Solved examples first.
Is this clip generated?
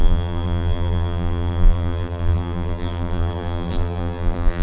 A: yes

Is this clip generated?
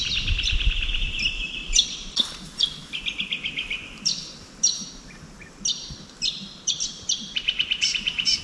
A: yes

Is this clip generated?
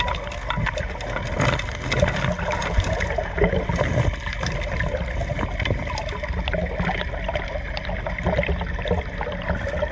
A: no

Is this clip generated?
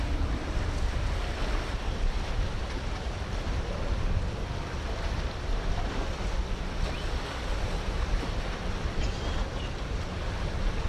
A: no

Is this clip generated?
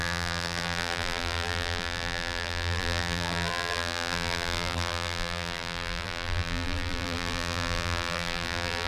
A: yes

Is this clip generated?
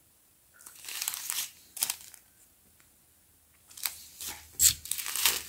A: no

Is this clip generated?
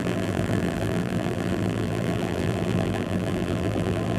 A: yes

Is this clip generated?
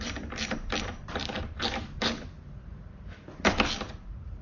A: yes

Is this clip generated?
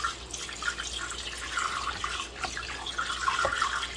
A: no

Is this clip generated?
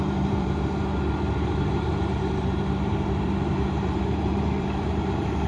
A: yes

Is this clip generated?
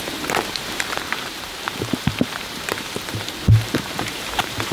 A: yes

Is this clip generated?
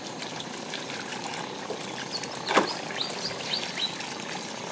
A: no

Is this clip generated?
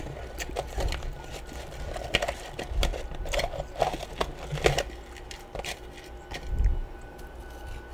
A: no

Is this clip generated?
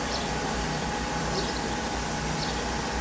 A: yes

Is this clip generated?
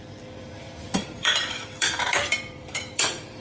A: yes